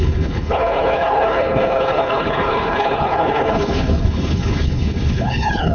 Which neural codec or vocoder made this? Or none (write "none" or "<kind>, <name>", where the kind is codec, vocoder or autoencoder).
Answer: codec, HILCodec